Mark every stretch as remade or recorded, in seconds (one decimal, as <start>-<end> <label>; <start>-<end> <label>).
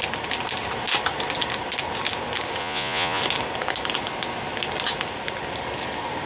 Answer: 0.0-2.6 recorded; 2.6-3.2 remade; 3.2-6.3 recorded